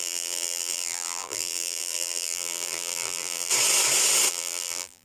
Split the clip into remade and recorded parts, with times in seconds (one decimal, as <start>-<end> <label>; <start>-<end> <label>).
0.0-3.5 remade; 3.5-4.3 recorded; 4.3-5.0 remade